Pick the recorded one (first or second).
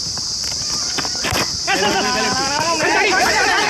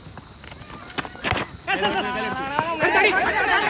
second